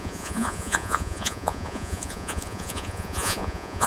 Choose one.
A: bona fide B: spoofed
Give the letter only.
B